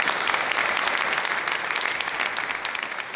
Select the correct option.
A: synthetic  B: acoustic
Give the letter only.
B